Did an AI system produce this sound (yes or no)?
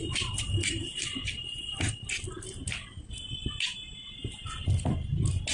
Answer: no